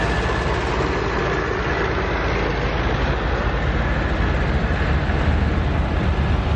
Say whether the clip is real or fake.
real